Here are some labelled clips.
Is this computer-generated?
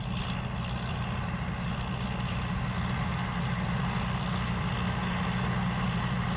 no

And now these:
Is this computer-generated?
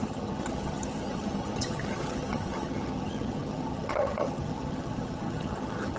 yes